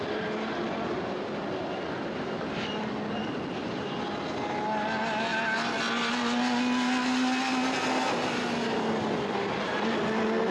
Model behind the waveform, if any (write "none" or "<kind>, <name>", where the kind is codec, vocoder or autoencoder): none